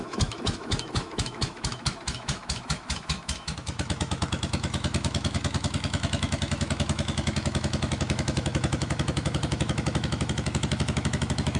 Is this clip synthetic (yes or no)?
yes